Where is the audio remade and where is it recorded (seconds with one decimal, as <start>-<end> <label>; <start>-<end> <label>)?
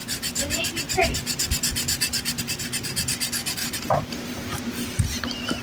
0.0-3.6 recorded; 3.6-5.0 remade; 5.0-5.6 recorded